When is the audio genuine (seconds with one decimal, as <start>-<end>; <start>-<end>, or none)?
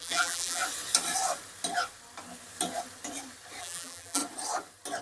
0.6-3.6; 4.2-5.0